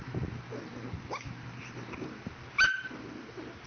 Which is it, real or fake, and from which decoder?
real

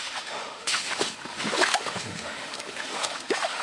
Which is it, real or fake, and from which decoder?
fake, autoencoder, DAC-VAE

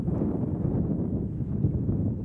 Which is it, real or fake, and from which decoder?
real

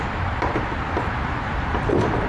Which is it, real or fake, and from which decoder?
fake, vocoder, BigVGAN v2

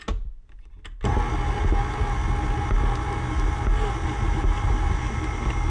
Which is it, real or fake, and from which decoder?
real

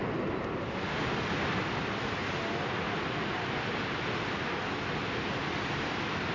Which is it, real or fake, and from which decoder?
real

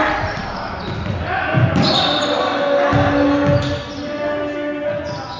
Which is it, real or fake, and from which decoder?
real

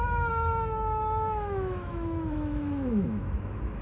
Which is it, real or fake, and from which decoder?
fake, autoencoder, DAC-VAE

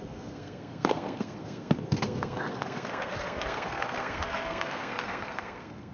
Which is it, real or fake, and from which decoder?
fake, codec, SNAC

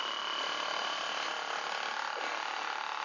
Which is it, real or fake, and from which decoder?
real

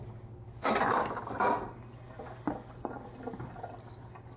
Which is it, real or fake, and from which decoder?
real